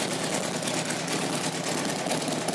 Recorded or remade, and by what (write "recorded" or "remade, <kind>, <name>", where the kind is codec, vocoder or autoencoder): recorded